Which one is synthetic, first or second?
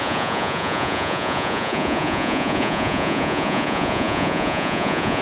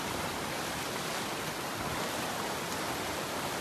first